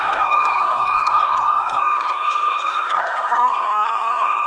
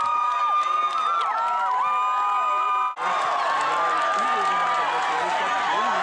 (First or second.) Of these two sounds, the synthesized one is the first